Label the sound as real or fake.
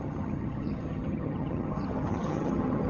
fake